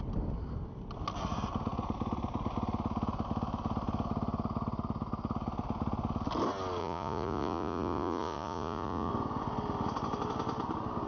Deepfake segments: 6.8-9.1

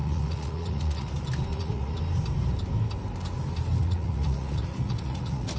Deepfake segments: 0.0-1.1; 1.5-2.0; 3.8-5.6

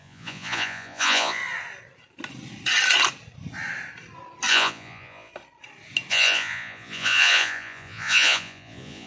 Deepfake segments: 0.0-1.4; 4.5-5.3; 6.1-9.1

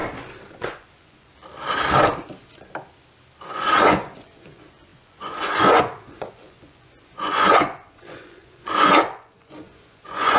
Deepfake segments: 0.5-1.3; 3.5-10.4

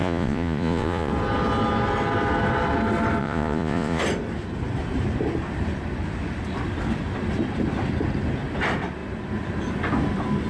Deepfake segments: 0.0-1.1; 3.2-4.0